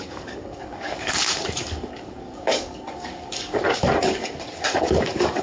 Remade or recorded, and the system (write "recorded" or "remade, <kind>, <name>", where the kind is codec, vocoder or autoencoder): remade, codec, DAC